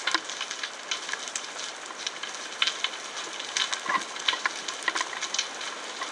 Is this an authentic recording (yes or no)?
yes